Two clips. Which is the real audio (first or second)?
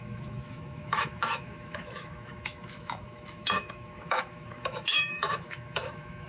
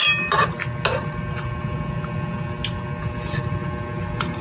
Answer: second